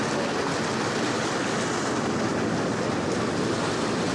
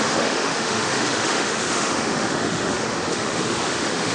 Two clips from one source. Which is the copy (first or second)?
second